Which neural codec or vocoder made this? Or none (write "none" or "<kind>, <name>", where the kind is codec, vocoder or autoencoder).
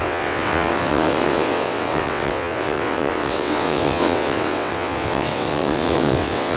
vocoder, WaveNeXt